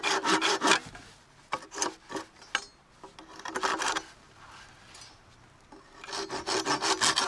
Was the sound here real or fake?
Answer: real